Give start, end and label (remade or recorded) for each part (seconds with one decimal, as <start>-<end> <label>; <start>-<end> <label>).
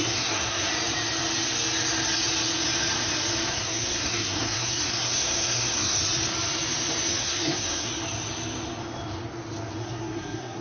0.0-0.7 remade; 0.7-3.5 recorded; 3.5-6.0 remade; 6.0-7.2 recorded; 7.2-7.9 remade; 7.9-9.8 recorded; 9.8-10.6 remade